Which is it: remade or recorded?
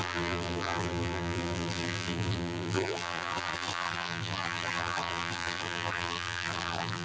remade